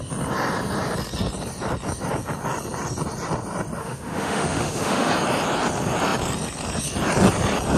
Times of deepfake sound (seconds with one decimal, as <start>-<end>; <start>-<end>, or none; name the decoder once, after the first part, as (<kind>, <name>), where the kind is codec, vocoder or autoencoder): 3.8-5.1 (autoencoder, DAC-VAE)

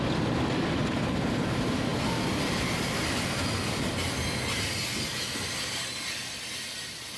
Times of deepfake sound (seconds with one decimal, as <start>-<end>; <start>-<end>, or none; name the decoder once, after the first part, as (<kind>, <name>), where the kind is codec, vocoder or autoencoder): none

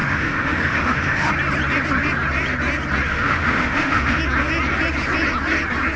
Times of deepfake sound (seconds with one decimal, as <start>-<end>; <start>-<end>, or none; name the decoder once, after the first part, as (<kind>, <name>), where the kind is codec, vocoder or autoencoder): 0.0-1.3 (autoencoder, DAC-VAE); 3.1-4.2

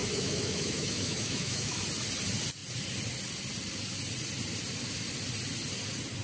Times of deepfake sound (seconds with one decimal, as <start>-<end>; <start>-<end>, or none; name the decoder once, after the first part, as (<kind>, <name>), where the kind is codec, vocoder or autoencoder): 0.0-1.8 (autoencoder, DAC-VAE)

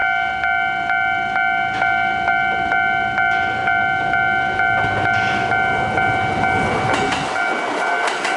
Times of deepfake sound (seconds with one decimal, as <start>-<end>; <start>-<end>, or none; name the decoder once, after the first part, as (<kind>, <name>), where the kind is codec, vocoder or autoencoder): none

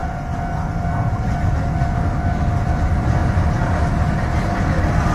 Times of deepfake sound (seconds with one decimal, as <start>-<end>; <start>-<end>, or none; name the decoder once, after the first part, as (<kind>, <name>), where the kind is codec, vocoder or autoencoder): none

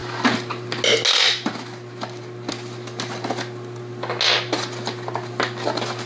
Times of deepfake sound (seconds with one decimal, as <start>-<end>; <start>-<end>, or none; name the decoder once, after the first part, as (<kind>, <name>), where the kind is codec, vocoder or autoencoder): none

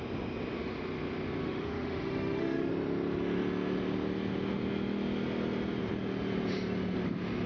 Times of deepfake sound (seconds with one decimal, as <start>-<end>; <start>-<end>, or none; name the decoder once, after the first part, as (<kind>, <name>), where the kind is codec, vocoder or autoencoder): 1.4-2.7 (autoencoder, DAC-VAE)